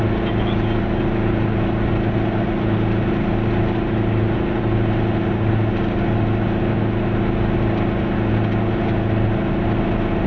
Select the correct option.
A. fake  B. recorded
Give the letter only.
B